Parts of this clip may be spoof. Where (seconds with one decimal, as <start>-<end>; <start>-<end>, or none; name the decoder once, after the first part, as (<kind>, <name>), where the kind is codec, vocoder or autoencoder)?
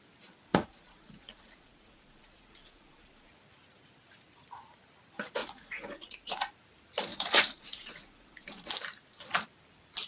0.5-3.3 (vocoder, Vocos); 5.4-6.5; 7.1-8.7